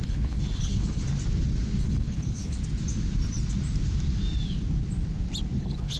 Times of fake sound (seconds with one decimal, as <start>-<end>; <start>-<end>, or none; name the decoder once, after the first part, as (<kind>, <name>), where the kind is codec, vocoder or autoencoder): 0.0-1.0 (codec, HILCodec); 1.8-2.6; 5.6-6.0